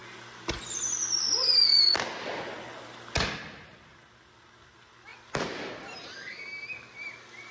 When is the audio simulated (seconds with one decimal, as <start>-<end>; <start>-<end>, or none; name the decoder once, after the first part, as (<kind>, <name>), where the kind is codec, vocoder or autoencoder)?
none